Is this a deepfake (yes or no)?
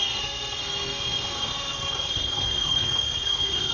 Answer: yes